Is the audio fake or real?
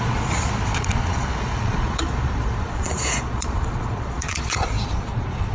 fake